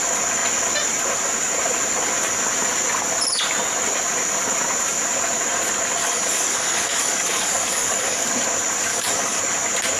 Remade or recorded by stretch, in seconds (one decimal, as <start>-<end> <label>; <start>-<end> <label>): 0.0-6.0 recorded; 6.0-8.3 remade; 8.3-8.9 recorded; 8.9-9.4 remade; 9.4-10.0 recorded